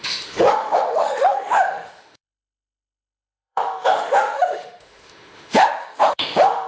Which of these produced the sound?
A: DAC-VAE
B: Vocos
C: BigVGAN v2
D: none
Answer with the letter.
A